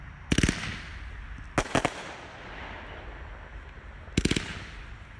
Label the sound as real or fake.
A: real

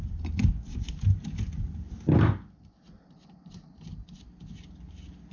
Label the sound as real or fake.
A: real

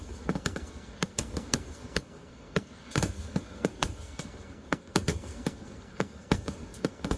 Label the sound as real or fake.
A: fake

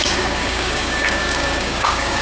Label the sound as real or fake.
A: fake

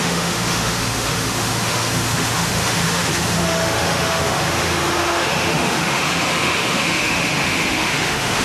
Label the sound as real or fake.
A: fake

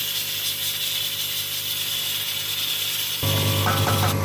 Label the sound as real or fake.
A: real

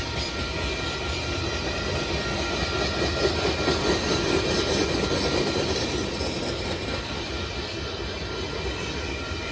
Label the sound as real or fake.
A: real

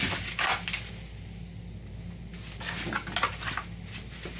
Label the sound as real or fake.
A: real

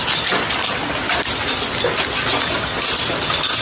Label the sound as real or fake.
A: real